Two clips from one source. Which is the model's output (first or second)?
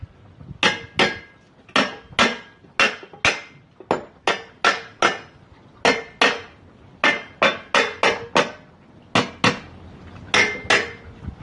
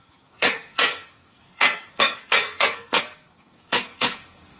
second